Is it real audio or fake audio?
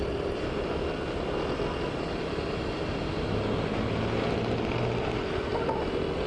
real